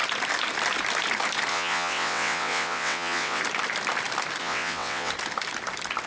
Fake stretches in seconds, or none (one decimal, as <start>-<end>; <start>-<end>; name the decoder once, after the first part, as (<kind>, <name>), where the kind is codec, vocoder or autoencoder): 1.5-3.4 (vocoder, WaveNeXt); 4.4-5.1